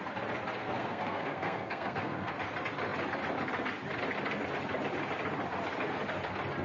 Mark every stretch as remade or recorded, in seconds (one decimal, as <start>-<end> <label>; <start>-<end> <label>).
0.0-0.6 recorded; 0.6-2.3 remade; 2.3-6.6 recorded